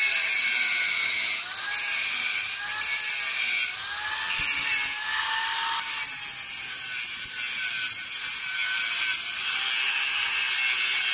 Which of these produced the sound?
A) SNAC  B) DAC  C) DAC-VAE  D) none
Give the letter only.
D